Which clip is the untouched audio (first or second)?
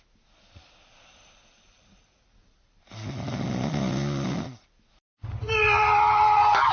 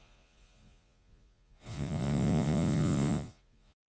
first